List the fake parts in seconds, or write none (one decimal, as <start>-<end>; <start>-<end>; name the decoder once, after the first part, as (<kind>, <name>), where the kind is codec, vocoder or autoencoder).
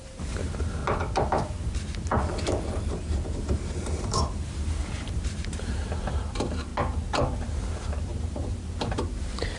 0.0-0.8 (vocoder, BigVGAN v2); 2.8-6.7; 7.4-8.4; 8.9-9.6